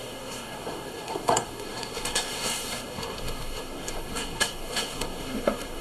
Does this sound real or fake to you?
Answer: fake